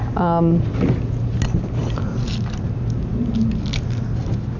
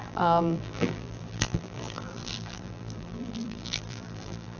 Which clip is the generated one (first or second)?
second